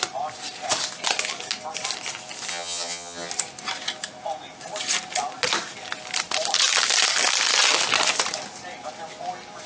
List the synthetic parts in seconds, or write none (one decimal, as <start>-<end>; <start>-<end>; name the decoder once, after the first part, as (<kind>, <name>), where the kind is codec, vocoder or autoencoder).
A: 2.5-3.3 (vocoder, HiFi-GAN)